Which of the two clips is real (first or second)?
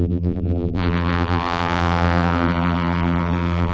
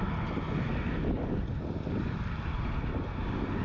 second